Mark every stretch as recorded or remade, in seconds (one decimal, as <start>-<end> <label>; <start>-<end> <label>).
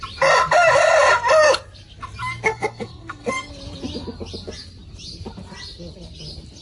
0.0-2.5 recorded; 2.5-3.5 remade; 3.5-6.6 recorded